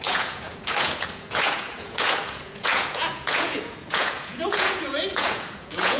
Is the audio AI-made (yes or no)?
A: yes